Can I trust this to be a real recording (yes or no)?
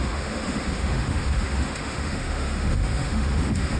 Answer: no